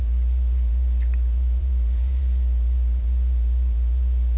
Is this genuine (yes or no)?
no